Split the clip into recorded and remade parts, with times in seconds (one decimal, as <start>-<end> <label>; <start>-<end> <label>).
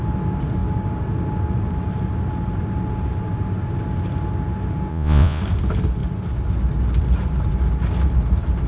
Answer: 0.0-4.9 recorded; 4.9-5.4 remade; 5.4-8.7 recorded